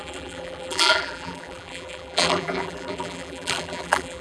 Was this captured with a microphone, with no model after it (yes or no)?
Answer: no